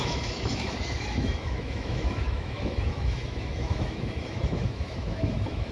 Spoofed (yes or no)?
yes